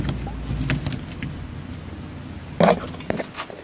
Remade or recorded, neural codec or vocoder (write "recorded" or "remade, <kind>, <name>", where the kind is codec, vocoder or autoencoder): recorded